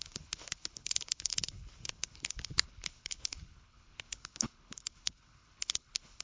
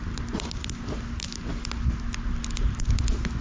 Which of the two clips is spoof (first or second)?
first